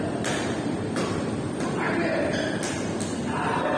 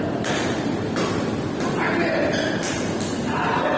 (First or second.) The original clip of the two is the second